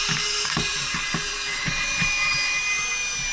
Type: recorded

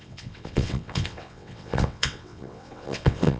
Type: remade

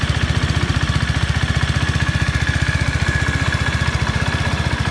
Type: recorded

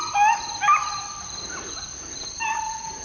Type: recorded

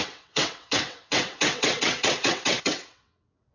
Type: remade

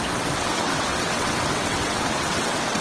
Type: remade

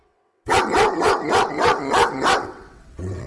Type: remade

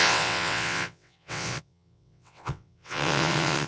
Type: remade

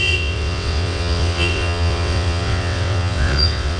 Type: remade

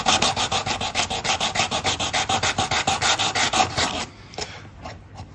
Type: recorded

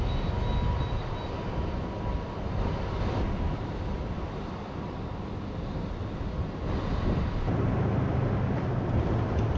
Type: recorded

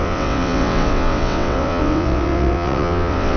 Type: remade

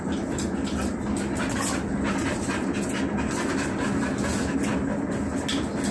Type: recorded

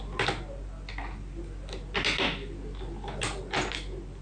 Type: recorded